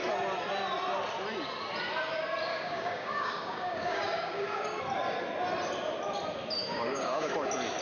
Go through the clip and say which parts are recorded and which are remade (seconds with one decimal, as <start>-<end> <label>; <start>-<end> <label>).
0.0-2.5 recorded; 2.5-4.8 remade; 4.8-6.6 recorded; 6.6-7.3 remade; 7.3-7.8 recorded